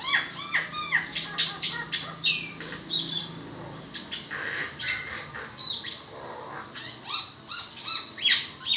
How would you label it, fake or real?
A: real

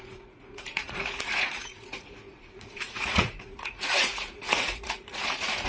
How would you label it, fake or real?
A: fake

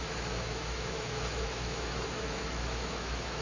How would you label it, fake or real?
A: fake